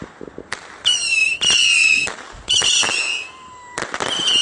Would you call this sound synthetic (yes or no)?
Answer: no